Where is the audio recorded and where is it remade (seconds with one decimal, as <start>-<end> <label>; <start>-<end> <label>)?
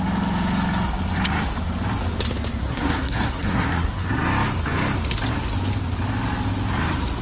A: 0.0-2.6 recorded; 2.6-4.1 remade; 4.1-7.2 recorded